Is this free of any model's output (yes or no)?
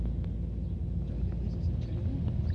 yes